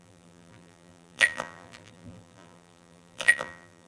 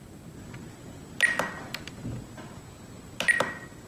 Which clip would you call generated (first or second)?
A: first